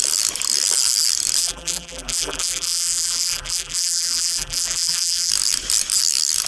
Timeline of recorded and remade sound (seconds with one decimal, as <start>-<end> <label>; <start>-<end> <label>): 0.0-1.4 recorded; 1.4-5.3 remade; 5.3-6.5 recorded